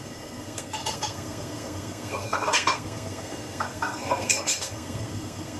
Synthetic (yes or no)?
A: yes